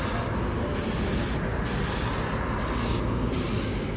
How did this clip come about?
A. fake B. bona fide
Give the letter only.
B